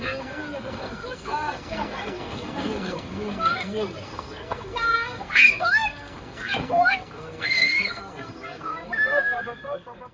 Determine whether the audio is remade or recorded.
remade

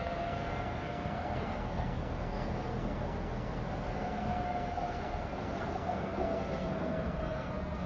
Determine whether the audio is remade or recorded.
remade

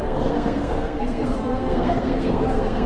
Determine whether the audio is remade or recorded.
remade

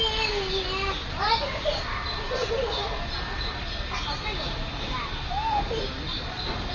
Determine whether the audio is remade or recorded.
recorded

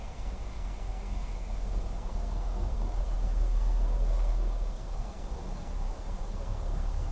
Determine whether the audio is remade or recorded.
remade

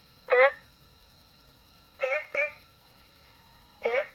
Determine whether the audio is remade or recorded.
remade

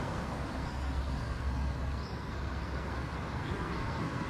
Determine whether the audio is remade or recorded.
remade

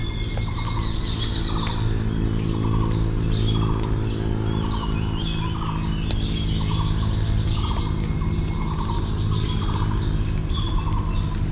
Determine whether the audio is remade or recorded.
recorded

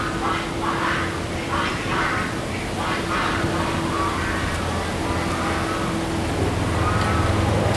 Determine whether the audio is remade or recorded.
recorded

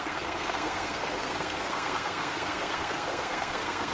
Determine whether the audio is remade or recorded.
remade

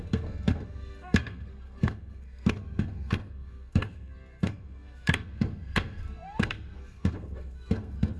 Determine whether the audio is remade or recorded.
remade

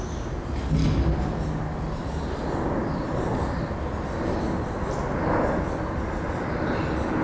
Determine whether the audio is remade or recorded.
recorded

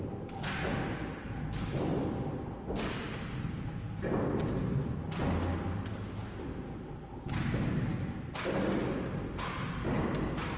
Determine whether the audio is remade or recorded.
recorded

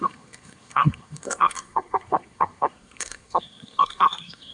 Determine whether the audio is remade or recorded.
remade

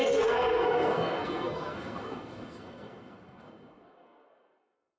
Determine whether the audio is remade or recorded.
remade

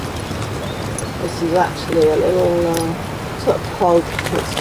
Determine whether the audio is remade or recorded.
recorded